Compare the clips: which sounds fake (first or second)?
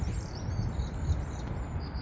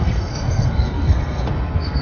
second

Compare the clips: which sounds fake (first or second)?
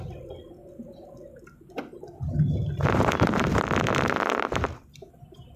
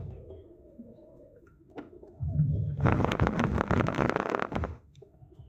second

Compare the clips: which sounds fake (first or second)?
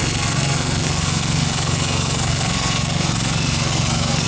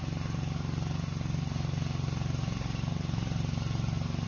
first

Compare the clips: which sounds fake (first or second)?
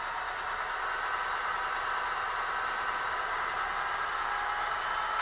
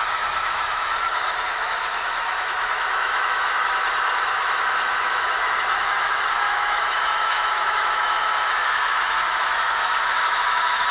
second